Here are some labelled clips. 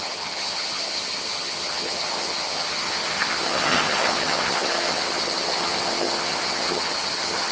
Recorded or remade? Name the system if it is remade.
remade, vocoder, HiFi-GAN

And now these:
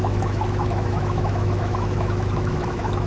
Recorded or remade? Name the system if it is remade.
remade, autoencoder, DAC-VAE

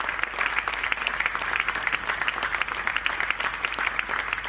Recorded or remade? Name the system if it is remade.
recorded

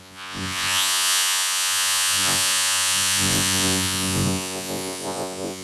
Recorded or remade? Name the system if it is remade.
remade, vocoder, Vocos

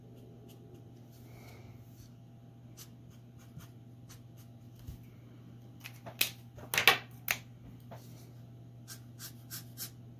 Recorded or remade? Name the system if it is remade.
recorded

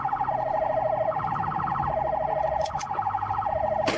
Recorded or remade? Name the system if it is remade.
recorded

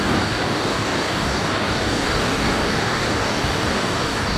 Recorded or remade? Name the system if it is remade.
remade, codec, DAC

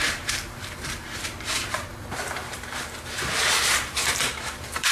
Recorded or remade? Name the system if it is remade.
remade, vocoder, BigVGAN v2